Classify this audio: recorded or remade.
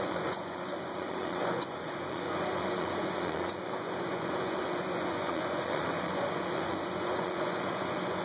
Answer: remade